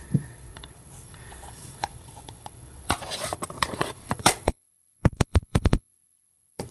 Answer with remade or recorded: remade